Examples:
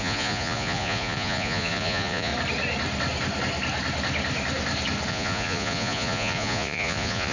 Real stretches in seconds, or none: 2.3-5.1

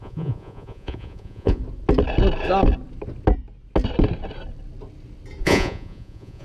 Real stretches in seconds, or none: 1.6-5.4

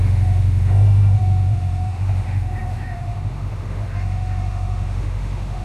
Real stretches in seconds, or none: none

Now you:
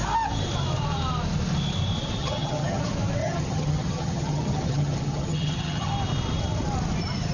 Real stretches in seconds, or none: 0.0-2.2; 2.8-3.2; 5.9-7.3

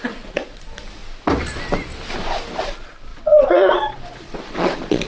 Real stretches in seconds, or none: 1.0-2.7

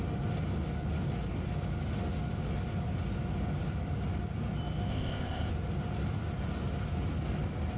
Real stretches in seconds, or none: 0.0-4.9; 5.5-7.8